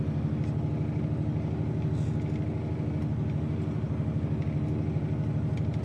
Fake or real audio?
real